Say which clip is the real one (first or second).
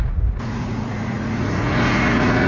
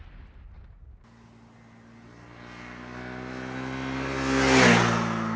second